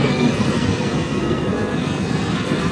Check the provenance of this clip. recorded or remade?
remade